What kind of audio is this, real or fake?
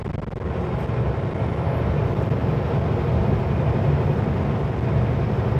real